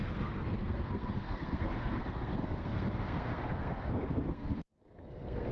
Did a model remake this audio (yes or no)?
yes